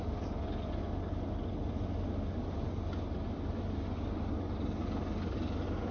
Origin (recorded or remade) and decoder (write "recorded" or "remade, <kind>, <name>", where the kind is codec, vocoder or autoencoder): recorded